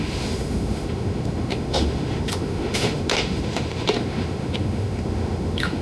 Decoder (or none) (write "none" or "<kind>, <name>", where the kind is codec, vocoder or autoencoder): autoencoder, DAC-VAE